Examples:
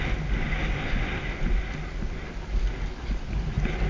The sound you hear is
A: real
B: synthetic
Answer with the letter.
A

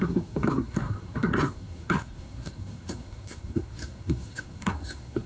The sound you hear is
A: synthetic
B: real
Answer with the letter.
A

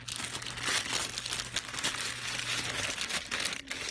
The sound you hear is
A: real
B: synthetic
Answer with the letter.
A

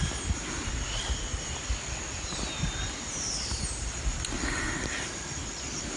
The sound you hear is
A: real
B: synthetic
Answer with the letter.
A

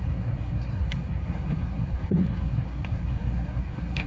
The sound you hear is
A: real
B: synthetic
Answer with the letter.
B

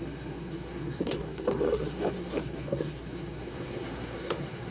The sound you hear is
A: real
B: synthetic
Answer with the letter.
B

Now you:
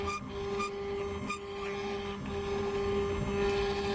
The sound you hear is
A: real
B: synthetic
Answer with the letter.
A